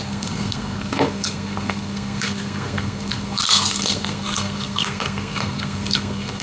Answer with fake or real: fake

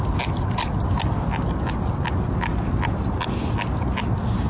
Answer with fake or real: real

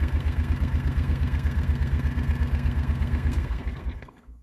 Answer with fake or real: fake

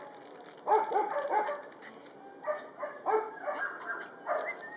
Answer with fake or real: real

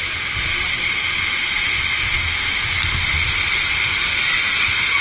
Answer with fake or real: real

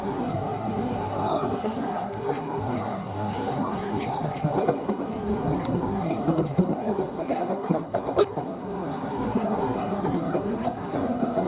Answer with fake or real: fake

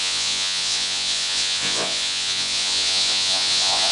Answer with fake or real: fake